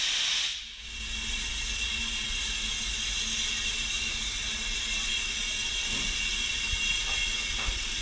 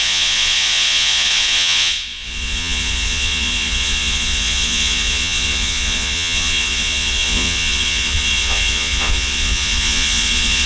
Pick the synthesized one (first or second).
second